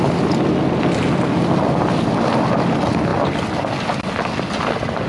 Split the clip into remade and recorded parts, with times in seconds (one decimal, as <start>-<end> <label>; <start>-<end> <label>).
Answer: 0.0-5.1 recorded